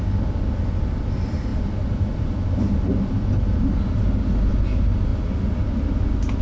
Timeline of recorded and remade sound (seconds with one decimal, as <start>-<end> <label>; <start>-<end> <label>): 0.0-6.4 recorded